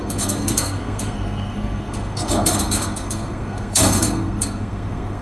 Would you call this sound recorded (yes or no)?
no